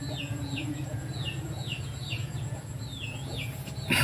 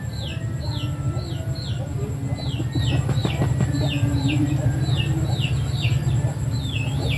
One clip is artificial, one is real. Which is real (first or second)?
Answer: second